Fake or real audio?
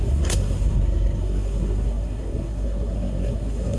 fake